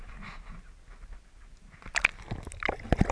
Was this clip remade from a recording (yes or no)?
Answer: no